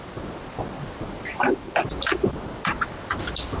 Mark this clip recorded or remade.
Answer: recorded